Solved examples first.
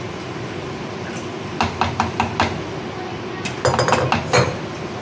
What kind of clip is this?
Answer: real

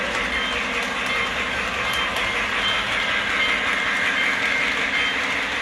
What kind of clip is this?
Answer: real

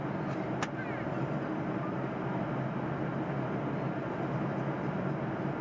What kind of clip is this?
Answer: real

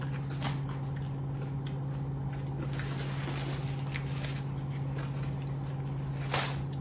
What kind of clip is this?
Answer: real